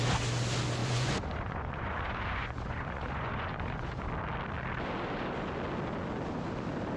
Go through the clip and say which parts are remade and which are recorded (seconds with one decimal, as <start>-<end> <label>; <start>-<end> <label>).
0.0-0.8 recorded; 0.8-4.1 remade; 4.1-7.0 recorded